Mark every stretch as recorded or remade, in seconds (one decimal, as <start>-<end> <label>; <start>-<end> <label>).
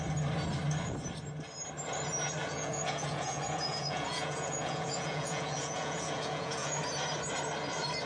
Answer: 0.0-2.4 recorded; 2.4-6.8 remade; 6.8-8.1 recorded